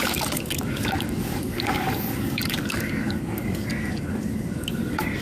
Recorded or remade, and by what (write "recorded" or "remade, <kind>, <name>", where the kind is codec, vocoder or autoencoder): remade, codec, DAC